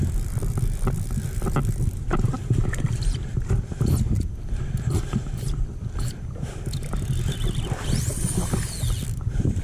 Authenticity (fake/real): real